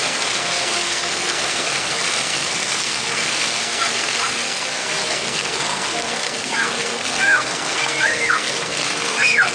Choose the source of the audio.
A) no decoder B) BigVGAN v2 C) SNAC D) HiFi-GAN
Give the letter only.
C